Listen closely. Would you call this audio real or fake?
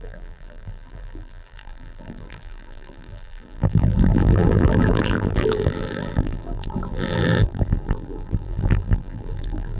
fake